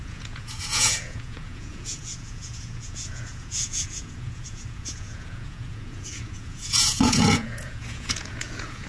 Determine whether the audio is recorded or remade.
remade